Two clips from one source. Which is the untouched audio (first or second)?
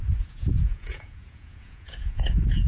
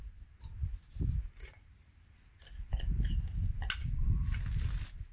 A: second